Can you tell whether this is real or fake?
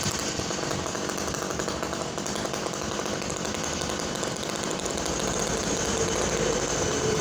real